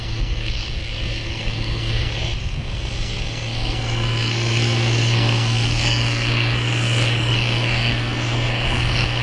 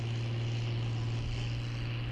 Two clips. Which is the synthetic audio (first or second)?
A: first